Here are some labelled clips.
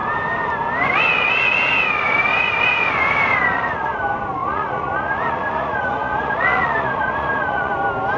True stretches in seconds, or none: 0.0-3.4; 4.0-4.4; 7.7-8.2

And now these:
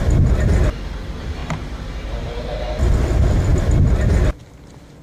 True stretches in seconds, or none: 0.0-5.0